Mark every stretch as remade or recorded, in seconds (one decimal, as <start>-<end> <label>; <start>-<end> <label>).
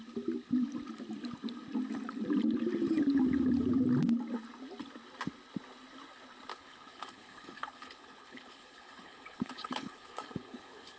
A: 0.0-6.5 recorded; 6.5-11.0 remade